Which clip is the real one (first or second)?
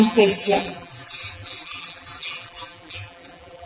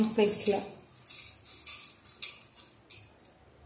second